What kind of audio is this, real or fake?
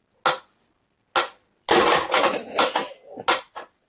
real